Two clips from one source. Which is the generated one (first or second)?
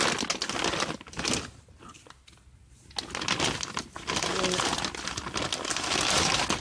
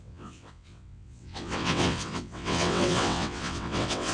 second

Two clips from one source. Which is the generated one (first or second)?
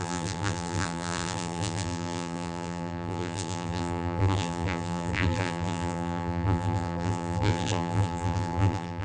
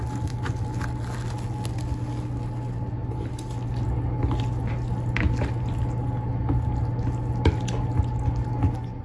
first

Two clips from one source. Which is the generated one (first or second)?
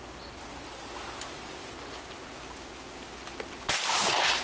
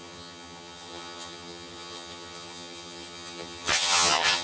second